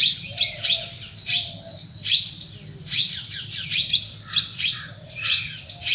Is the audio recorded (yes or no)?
yes